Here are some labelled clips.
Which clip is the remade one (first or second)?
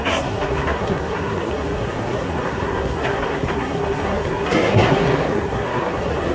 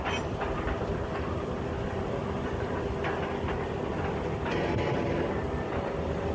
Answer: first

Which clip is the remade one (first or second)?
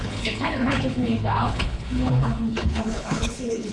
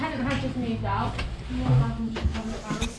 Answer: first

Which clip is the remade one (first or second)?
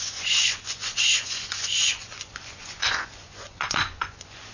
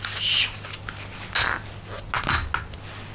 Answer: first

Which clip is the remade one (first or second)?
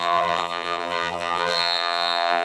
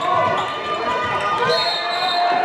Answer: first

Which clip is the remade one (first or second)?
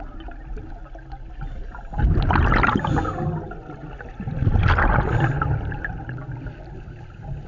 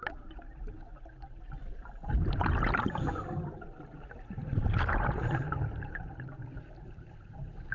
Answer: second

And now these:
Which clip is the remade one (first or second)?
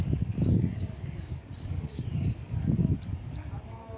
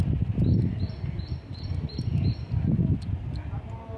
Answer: first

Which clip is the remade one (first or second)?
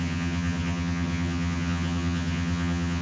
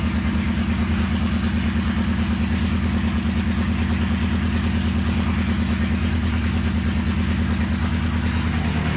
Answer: first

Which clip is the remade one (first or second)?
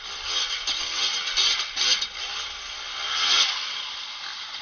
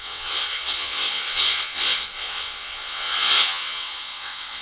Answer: second